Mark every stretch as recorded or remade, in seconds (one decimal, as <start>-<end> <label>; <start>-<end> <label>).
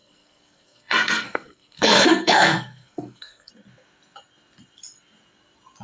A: 0.0-3.5 remade; 3.5-5.8 recorded